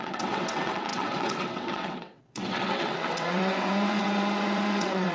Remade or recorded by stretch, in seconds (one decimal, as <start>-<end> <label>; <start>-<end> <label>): 0.0-5.1 remade